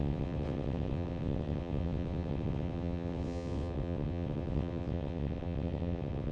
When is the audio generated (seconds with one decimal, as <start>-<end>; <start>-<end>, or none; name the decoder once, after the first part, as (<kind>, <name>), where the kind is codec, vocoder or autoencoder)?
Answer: 0.0-6.3 (vocoder, WaveNeXt)